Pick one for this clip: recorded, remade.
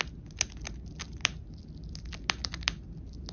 recorded